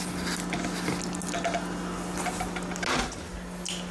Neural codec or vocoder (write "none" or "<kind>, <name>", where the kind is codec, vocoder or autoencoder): none